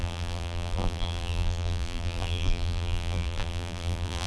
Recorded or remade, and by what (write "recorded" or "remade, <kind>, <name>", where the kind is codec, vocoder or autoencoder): remade, vocoder, BigVGAN v2